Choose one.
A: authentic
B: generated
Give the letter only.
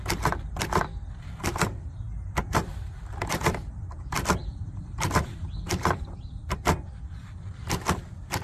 B